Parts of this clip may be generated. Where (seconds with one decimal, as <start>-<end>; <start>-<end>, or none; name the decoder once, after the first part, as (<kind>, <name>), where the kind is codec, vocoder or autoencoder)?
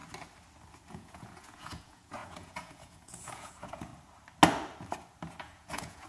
0.9-3.9 (vocoder, Vocos); 5.4-6.1